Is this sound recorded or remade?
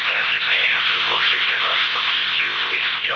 remade